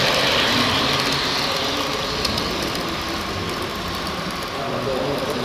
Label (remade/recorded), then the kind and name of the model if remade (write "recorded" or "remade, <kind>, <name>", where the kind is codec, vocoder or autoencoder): recorded